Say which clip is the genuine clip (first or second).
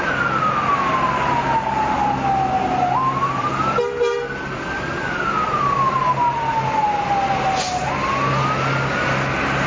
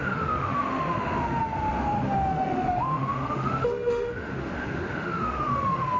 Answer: first